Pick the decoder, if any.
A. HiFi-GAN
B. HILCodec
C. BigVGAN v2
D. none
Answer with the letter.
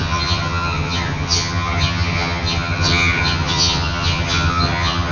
A